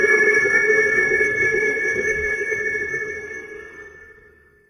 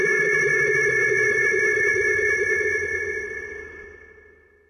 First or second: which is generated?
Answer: first